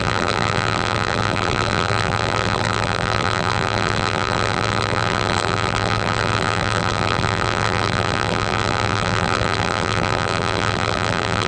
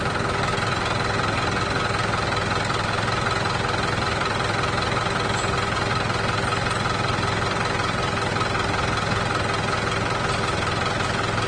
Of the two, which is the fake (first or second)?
first